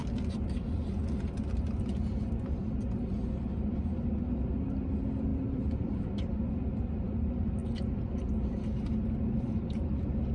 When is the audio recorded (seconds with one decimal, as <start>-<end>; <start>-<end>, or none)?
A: 0.0-5.3; 6.5-10.3